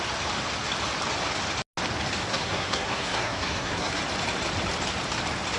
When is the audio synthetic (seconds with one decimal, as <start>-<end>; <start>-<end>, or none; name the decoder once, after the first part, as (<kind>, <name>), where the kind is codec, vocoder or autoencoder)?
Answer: 2.3-4.0 (codec, SNAC)

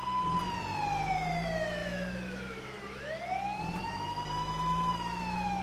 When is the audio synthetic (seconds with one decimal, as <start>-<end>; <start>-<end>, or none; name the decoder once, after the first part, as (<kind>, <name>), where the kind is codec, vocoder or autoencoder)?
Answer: 1.1-5.6 (autoencoder, DAC-VAE)

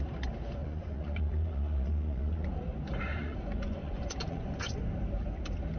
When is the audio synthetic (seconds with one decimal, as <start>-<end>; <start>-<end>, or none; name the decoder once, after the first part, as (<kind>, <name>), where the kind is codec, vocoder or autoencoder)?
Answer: 0.6-2.6 (vocoder, Vocos); 3.1-4.9